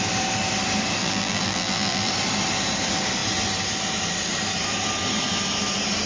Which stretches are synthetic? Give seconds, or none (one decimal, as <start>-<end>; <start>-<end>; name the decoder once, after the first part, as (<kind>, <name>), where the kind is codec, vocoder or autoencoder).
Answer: 1.0-2.1 (vocoder, BigVGAN v2)